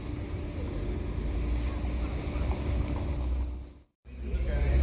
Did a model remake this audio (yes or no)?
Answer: no